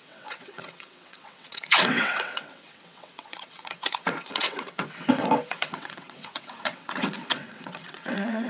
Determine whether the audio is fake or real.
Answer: fake